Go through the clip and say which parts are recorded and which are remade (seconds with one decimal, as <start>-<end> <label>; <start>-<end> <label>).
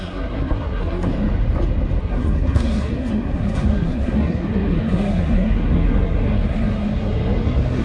0.0-1.1 remade; 1.1-2.0 recorded; 2.0-7.8 remade